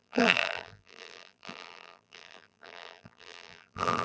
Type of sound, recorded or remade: remade